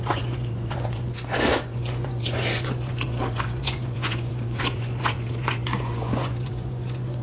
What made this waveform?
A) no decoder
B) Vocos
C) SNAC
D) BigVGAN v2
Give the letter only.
B